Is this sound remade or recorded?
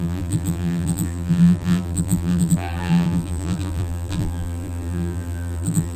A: remade